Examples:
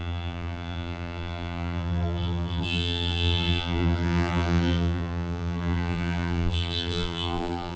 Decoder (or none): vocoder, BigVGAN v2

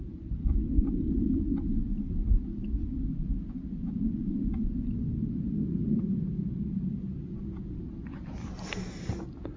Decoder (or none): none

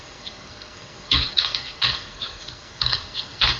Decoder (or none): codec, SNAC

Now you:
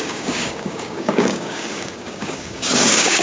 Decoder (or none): codec, DAC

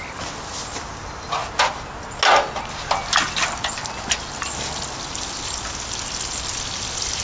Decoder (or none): none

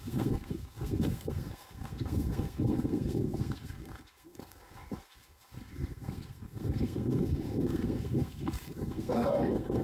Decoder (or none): codec, SNAC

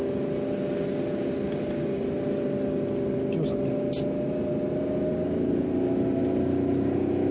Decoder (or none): none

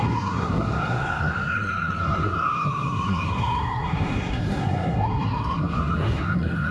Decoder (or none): codec, SNAC